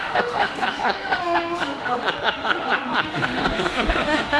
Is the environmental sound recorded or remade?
remade